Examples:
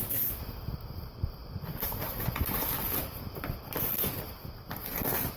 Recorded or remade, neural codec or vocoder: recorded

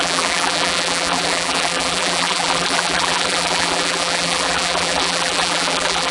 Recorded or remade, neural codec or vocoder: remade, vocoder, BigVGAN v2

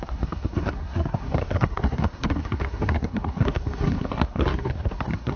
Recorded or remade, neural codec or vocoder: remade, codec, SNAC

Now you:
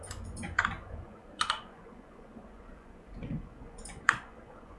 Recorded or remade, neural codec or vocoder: remade, vocoder, Vocos